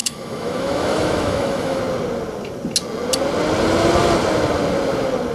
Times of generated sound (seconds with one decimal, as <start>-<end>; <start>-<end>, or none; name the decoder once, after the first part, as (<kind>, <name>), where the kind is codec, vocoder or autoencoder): 0.0-1.8 (autoencoder, DAC-VAE)